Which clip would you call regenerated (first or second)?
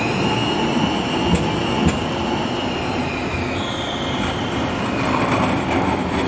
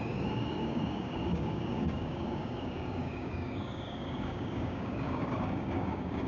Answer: second